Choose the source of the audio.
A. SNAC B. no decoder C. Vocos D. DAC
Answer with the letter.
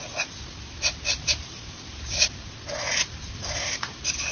B